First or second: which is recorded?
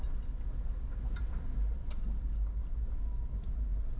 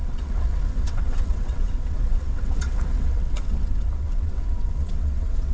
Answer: first